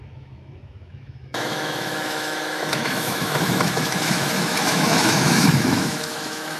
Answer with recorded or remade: remade